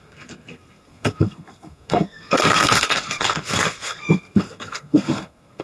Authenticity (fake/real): fake